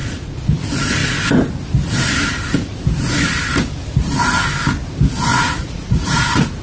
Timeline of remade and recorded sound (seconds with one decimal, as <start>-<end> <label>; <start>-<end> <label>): 0.0-0.6 remade; 0.6-5.3 recorded; 5.3-6.6 remade